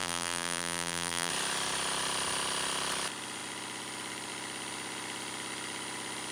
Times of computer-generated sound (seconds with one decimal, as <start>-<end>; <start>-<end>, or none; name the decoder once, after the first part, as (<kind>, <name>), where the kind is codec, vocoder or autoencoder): 0.0-1.3 (vocoder, BigVGAN v2)